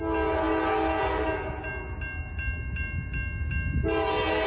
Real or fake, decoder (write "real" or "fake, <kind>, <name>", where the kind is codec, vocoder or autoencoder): real